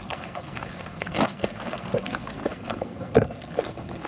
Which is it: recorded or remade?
remade